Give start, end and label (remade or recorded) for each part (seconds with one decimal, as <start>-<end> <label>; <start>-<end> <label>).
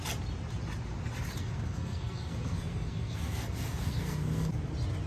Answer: 0.0-1.4 recorded; 1.4-4.5 remade; 4.5-5.1 recorded